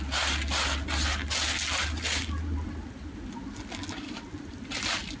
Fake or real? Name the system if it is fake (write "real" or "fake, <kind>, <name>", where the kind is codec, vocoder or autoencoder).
real